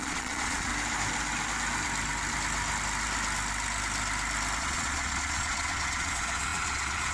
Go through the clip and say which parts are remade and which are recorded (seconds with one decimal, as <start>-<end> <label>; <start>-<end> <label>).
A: 0.0-0.7 remade; 0.7-4.6 recorded; 4.6-7.1 remade